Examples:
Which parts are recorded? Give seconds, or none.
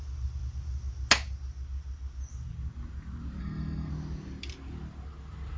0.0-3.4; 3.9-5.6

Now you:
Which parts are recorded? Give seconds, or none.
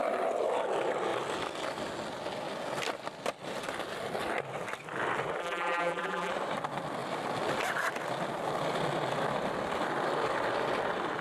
0.0-5.4; 6.3-11.2